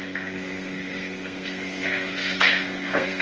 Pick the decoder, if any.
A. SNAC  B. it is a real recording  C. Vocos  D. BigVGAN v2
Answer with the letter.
A